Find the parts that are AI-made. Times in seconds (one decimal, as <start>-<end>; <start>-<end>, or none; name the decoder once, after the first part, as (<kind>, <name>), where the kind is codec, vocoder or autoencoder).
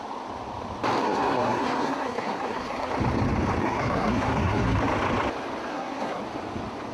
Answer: 1.0-2.9 (codec, SNAC); 3.6-4.8; 5.7-6.2